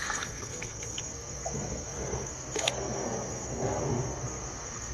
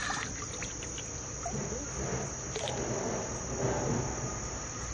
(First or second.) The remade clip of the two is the first